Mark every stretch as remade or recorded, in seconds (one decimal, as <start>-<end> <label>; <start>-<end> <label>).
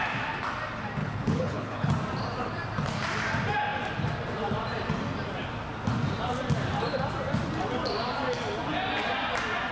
0.0-1.0 recorded; 1.0-1.9 remade; 1.9-9.7 recorded